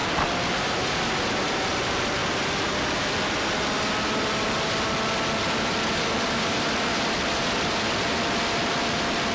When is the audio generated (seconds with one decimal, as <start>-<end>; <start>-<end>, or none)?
0.5-2.2; 5.4-9.3